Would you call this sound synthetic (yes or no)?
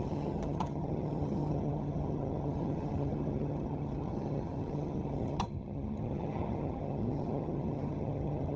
yes